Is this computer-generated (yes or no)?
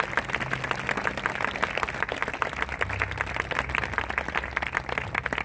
no